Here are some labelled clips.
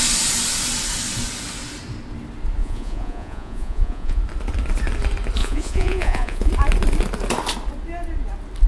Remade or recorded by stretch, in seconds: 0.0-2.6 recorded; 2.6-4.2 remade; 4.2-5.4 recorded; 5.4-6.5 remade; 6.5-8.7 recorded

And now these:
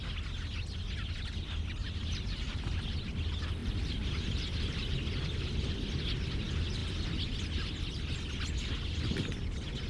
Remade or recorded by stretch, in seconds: 0.0-9.9 recorded

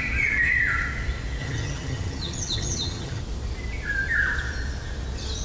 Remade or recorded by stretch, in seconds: 0.0-1.4 recorded; 1.4-3.2 remade; 3.2-5.4 recorded

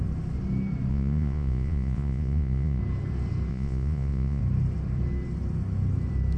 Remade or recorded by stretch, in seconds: 0.0-0.9 recorded; 0.9-2.8 remade; 2.8-3.5 recorded; 3.5-4.4 remade; 4.4-6.4 recorded

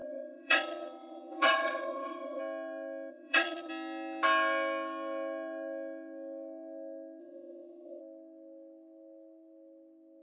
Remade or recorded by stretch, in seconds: 0.0-2.4 remade; 2.4-3.1 recorded; 3.1-3.7 remade; 3.7-7.2 recorded; 7.2-8.0 remade; 8.0-10.2 recorded

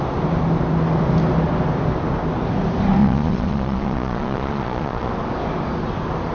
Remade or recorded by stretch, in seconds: 0.0-3.0 recorded; 3.0-5.1 remade; 5.1-6.3 recorded

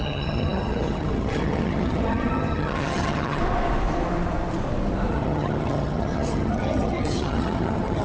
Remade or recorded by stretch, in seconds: 0.0-3.4 remade; 3.4-5.1 recorded; 5.1-8.0 remade